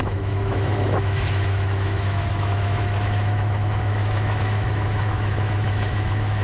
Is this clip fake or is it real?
fake